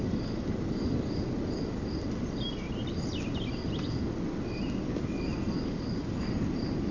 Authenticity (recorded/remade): recorded